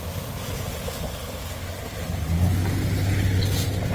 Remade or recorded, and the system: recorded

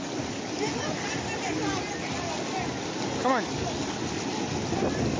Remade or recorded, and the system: recorded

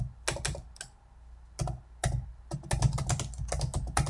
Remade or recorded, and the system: recorded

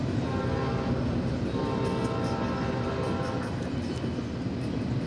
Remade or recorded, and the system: recorded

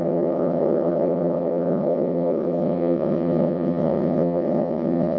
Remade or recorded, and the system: remade, vocoder, WaveNeXt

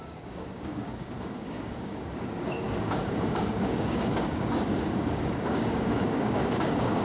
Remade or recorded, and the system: remade, codec, DAC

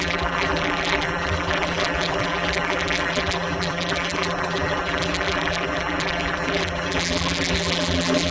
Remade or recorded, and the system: remade, vocoder, BigVGAN v2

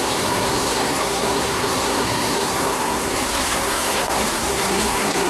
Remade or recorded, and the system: remade, codec, SNAC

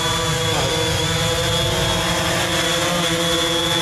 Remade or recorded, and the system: recorded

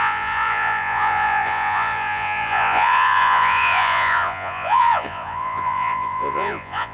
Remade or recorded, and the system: remade, vocoder, Vocos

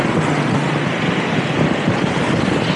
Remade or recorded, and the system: recorded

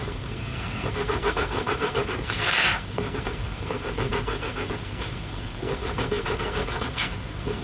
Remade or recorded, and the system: remade, codec, SNAC